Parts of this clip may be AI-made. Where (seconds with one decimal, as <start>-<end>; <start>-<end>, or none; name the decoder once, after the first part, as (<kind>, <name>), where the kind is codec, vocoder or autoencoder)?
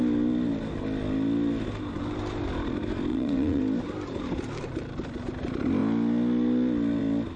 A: 3.1-3.6 (vocoder, Vocos)